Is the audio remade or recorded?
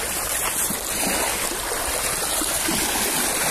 recorded